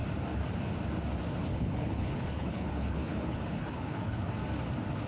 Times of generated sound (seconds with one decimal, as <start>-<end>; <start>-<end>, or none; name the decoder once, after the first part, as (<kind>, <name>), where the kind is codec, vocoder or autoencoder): 1.5-4.3 (codec, HILCodec)